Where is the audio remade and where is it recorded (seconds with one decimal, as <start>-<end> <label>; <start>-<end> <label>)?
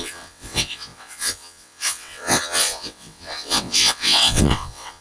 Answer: 0.0-5.0 remade